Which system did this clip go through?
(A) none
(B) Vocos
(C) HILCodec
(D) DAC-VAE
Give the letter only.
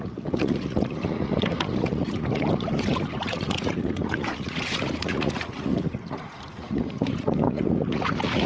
B